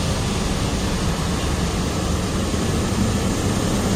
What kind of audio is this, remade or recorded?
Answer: recorded